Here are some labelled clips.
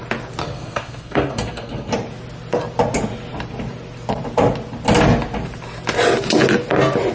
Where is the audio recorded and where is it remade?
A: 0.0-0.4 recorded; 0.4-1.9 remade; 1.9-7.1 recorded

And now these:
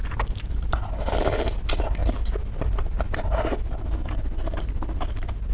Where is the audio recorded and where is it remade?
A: 0.0-5.5 recorded

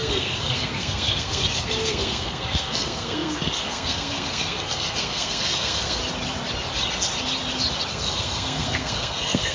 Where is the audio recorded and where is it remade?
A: 0.0-6.0 remade; 6.0-7.9 recorded; 7.9-9.5 remade

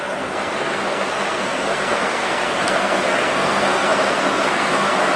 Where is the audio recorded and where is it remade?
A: 0.0-5.2 remade

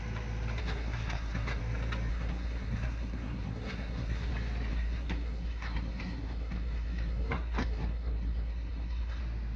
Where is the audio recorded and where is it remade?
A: 0.0-0.6 recorded; 0.6-1.6 remade; 1.6-2.1 recorded; 2.1-4.3 remade; 4.3-4.7 recorded; 4.7-9.2 remade; 9.2-9.6 recorded